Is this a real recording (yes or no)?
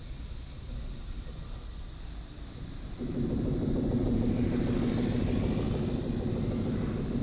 yes